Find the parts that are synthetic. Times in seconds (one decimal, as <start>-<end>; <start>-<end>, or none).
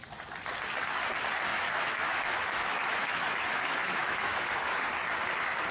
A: 1.5-4.9